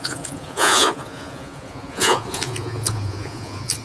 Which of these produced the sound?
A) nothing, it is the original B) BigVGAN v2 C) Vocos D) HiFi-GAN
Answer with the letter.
C